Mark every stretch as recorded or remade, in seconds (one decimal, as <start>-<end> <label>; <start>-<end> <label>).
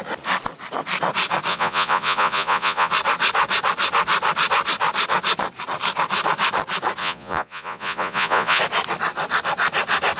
0.0-1.5 recorded; 1.5-2.9 remade; 2.9-7.0 recorded; 7.0-8.6 remade; 8.6-10.2 recorded